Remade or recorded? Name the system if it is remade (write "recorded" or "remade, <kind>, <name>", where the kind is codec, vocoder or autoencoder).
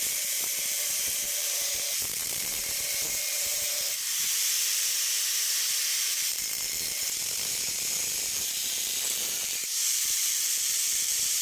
remade, vocoder, BigVGAN v2